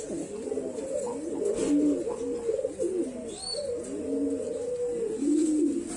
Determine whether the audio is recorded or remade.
recorded